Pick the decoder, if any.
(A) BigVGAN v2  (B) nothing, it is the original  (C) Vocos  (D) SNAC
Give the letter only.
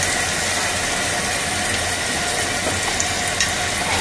B